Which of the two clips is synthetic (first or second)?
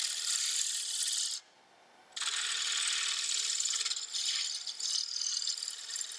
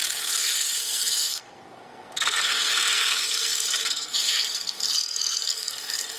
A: second